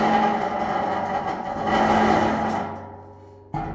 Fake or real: real